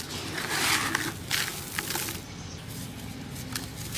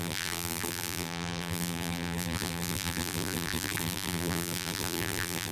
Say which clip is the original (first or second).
first